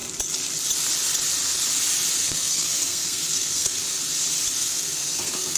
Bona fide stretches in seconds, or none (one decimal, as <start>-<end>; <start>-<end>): 0.0-2.2; 3.8-4.6